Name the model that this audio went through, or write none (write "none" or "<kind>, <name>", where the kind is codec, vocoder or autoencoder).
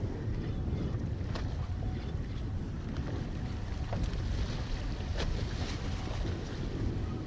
none